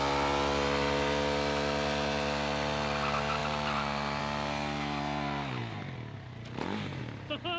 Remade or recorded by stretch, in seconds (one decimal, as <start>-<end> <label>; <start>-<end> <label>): 0.0-7.6 recorded